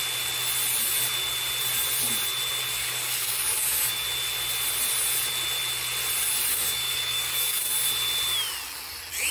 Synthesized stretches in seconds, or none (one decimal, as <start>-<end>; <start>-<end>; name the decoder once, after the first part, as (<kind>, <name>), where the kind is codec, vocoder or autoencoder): 2.8-3.9 (codec, DAC); 6.5-7.7